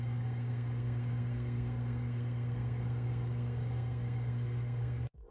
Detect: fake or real fake